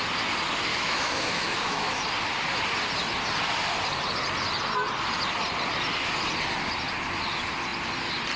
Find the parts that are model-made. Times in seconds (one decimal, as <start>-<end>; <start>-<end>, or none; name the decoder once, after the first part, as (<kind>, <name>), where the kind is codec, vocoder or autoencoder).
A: 0.7-2.0 (autoencoder, DAC-VAE)